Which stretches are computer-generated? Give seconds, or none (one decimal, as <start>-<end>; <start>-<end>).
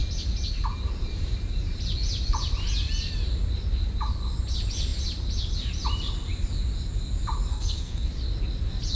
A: 7.5-8.1